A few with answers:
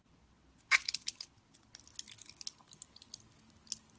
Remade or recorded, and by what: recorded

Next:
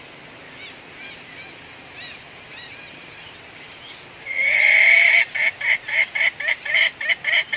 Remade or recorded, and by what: recorded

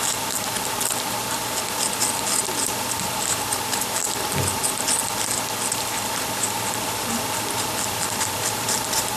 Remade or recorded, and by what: recorded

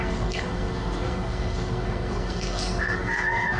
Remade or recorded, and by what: remade, codec, SNAC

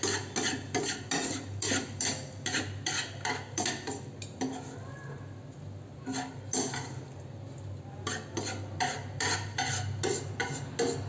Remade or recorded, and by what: recorded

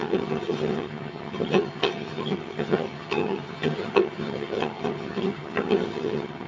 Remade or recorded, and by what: remade, vocoder, HiFi-GAN